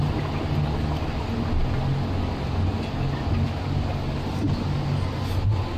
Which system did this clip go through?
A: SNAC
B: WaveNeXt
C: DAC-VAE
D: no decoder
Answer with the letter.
D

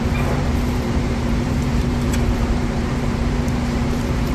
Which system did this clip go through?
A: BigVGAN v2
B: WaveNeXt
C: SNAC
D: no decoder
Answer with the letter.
A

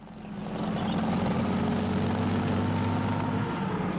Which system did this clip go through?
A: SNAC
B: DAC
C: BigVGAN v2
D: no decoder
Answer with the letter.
D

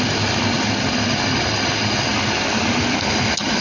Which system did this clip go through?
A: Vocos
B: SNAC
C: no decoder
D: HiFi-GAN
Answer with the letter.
C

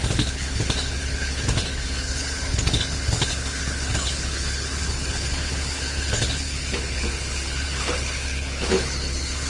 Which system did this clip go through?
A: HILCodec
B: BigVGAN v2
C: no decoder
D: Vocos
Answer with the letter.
A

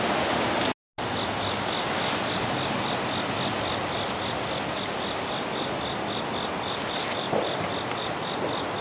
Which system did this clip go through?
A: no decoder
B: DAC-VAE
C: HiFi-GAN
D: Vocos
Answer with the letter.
A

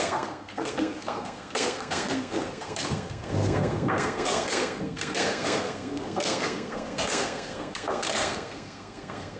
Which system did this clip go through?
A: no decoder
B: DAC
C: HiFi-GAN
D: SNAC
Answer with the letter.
D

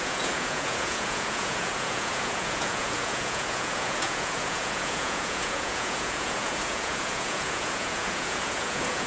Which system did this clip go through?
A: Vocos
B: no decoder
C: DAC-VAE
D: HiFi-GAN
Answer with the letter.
A